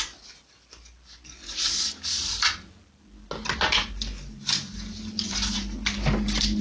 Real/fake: real